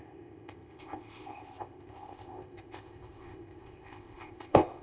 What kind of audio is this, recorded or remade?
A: remade